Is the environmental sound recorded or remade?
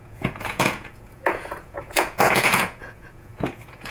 remade